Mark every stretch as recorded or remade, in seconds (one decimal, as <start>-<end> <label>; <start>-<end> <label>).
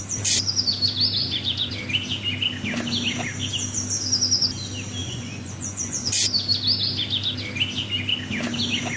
0.0-1.2 recorded; 1.2-1.7 remade; 1.7-5.0 recorded; 5.0-6.1 remade; 6.1-9.0 recorded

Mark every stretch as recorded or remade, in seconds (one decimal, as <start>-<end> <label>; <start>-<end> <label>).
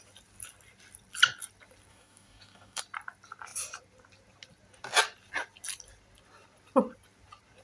0.0-1.9 recorded; 1.9-2.8 remade; 2.8-7.6 recorded